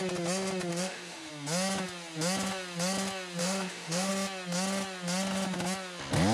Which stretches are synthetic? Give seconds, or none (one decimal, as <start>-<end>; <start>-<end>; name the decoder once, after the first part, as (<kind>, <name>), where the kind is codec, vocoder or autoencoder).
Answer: 0.7-1.3 (autoencoder, DAC-VAE); 3.4-4.1